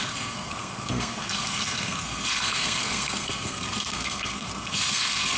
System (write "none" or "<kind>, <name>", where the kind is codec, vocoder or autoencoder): codec, SNAC